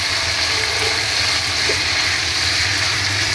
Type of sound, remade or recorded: recorded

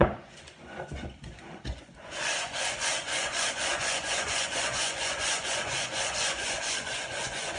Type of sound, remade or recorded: remade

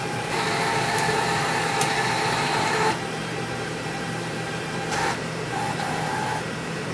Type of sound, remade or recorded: remade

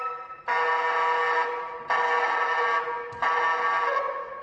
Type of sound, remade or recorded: recorded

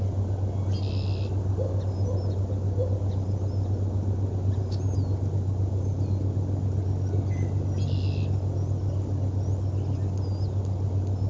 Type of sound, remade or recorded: recorded